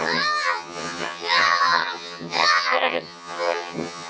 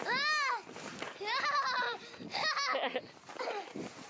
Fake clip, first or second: first